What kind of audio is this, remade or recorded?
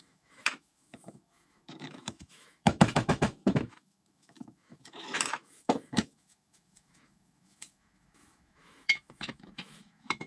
remade